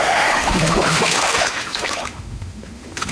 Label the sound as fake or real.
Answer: fake